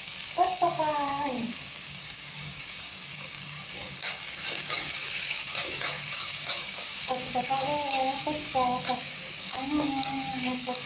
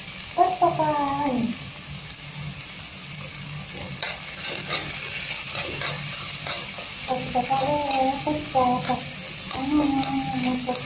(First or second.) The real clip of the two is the second